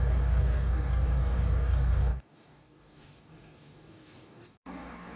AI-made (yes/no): yes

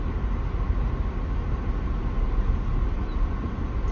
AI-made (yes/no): no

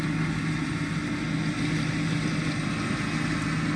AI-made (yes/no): no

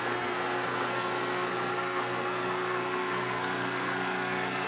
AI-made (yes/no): yes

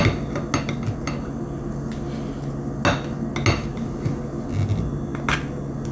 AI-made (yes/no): no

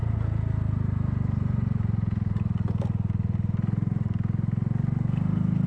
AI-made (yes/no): no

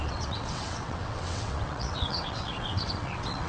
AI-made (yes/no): yes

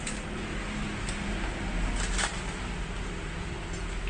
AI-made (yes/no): no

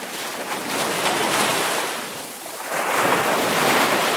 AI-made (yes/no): no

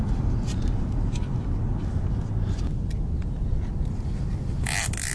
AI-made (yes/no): no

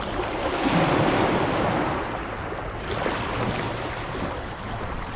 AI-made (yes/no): no